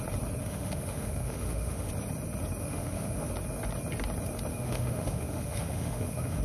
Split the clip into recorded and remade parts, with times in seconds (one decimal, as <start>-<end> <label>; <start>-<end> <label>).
0.0-0.4 recorded; 0.4-1.9 remade; 1.9-2.6 recorded; 2.6-3.3 remade; 3.3-4.5 recorded; 4.5-6.4 remade